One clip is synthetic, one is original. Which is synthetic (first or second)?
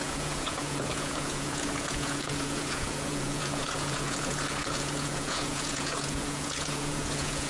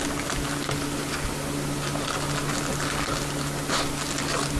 first